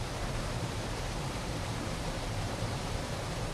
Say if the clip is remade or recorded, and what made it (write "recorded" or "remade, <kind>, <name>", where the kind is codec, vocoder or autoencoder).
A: remade, vocoder, BigVGAN v2